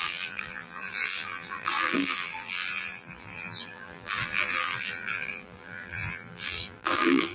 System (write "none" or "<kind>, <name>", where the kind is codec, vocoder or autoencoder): vocoder, BigVGAN v2